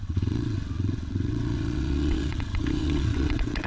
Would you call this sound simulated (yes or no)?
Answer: yes